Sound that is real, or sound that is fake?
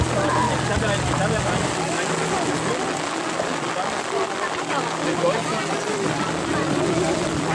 real